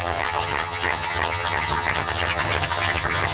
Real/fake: fake